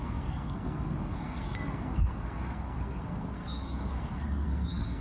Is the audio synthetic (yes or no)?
yes